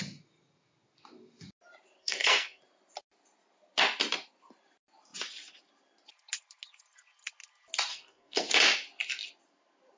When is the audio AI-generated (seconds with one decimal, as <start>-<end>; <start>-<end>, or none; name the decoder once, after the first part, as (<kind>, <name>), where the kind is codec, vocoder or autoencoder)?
2.0-2.6 (codec, SNAC); 7.9-8.5